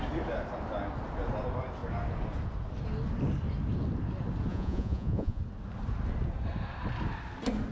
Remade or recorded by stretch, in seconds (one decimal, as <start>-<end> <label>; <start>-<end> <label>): 0.0-4.5 recorded; 4.5-5.4 remade; 5.4-7.7 recorded